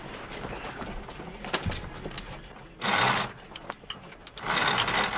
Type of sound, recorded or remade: recorded